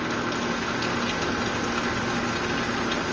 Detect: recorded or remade recorded